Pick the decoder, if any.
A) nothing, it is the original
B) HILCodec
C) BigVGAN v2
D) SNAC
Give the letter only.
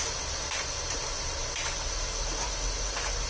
A